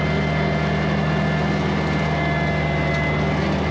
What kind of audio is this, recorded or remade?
recorded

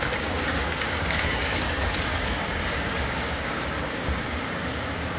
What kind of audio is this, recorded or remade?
remade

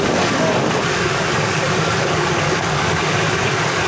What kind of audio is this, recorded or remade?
remade